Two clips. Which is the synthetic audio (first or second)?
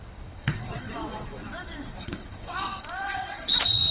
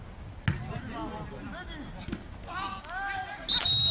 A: first